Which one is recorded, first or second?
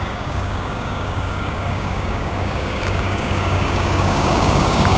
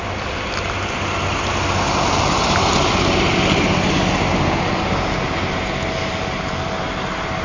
second